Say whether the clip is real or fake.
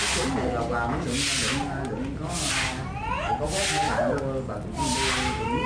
real